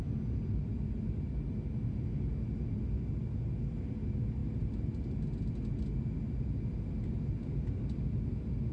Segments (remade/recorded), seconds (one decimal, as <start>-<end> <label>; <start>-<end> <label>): 0.0-8.7 recorded